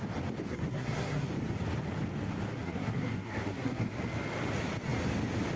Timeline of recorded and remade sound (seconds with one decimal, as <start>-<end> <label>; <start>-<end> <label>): 0.0-0.5 recorded; 0.5-1.3 remade; 1.3-2.5 recorded; 2.5-4.0 remade; 4.0-5.6 recorded